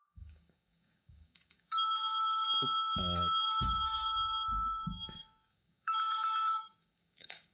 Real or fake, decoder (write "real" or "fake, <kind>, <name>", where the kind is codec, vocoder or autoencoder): fake, codec, DAC